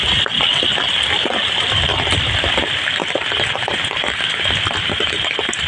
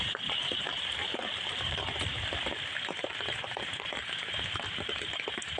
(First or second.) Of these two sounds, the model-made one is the second